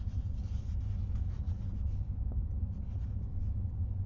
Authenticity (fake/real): real